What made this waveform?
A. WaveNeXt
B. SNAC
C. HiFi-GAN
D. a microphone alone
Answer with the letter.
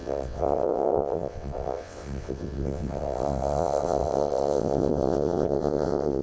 A